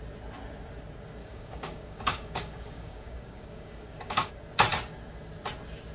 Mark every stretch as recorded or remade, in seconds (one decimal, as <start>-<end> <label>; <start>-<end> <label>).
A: 0.0-1.2 recorded; 1.2-4.3 remade; 4.3-5.9 recorded